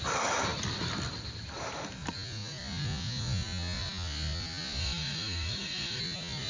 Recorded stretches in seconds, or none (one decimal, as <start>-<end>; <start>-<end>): 0.0-4.8; 6.0-6.5